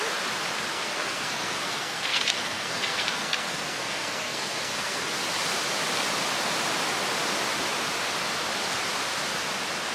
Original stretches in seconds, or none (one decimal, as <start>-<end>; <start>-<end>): 0.0-0.7; 5.0-9.9

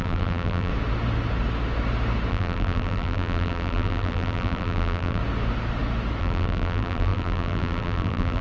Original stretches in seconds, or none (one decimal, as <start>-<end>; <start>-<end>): 0.7-2.3; 5.2-6.2